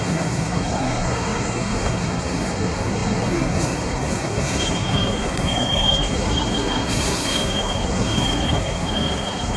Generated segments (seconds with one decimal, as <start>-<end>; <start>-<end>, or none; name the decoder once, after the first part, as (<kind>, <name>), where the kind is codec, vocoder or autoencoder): 0.0-9.6 (codec, SNAC)